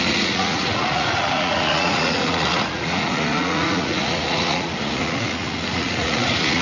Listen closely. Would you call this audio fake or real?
fake